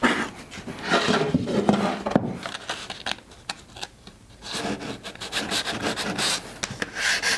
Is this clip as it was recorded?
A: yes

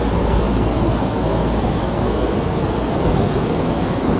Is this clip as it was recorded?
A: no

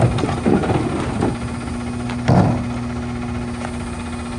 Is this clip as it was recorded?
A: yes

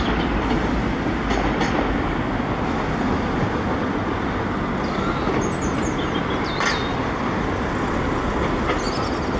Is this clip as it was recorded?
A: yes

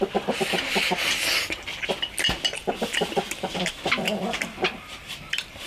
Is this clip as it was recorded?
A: yes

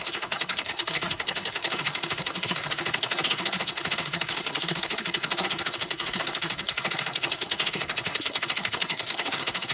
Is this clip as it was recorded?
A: no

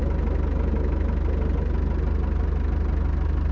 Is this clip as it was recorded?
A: yes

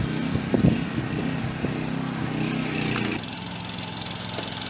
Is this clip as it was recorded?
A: yes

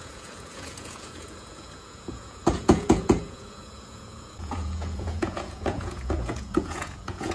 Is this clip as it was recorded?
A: no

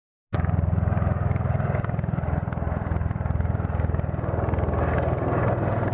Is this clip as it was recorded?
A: yes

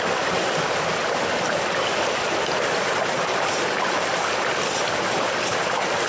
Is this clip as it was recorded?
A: yes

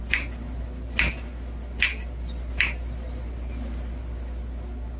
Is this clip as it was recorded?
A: yes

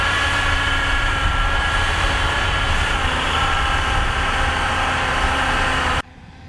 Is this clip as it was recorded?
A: no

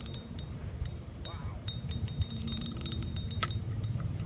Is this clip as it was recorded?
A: no